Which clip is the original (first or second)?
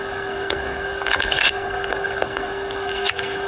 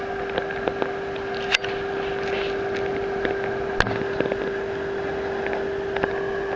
second